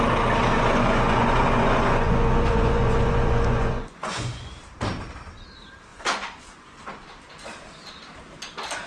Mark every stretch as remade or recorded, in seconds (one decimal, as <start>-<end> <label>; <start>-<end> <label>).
0.0-0.5 recorded; 0.5-4.5 remade; 4.5-5.9 recorded; 5.9-6.8 remade; 6.8-8.9 recorded